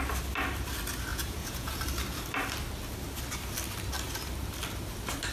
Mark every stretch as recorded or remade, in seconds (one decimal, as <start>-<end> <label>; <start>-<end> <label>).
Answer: 0.0-1.1 recorded; 1.1-1.8 remade; 1.8-5.3 recorded